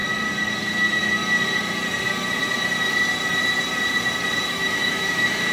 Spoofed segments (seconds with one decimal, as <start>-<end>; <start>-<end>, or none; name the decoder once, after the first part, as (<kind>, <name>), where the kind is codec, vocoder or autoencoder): 0.6-1.2 (autoencoder, DAC-VAE); 4.5-5.5